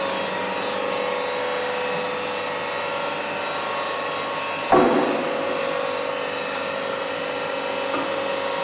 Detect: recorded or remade recorded